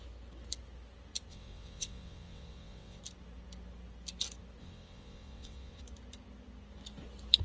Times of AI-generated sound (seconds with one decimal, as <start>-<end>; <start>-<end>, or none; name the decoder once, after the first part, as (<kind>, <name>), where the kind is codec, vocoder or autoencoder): 1.3-3.0 (vocoder, WaveNeXt); 4.6-5.8